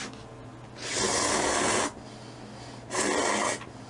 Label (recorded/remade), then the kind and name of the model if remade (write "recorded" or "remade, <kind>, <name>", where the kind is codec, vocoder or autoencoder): recorded